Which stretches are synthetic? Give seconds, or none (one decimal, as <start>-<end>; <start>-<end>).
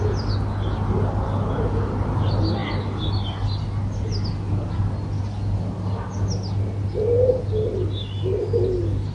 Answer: none